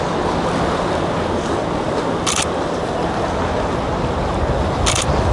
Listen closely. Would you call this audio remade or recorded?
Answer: recorded